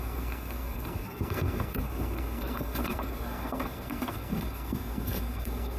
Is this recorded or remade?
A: remade